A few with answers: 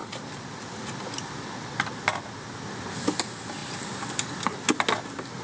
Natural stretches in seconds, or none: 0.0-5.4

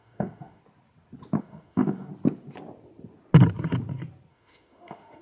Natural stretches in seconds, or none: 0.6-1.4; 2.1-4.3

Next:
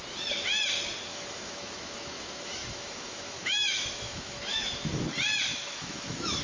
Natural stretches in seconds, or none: 0.0-1.1; 4.9-5.5

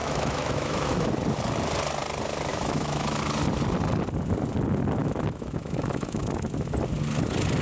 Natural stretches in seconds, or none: 1.1-2.5; 3.2-5.0; 6.2-7.6

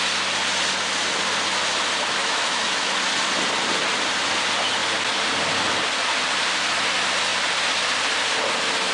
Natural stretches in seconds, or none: 0.0-2.2; 2.9-8.9

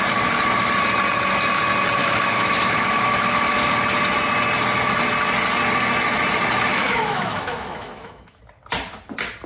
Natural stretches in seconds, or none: 0.0-2.0; 3.7-6.7; 8.4-9.5

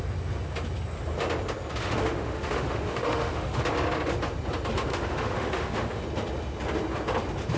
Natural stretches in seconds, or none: 0.0-1.8; 3.6-4.9; 6.0-7.6

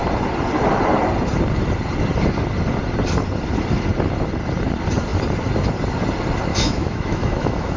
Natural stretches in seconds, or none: 0.0-6.5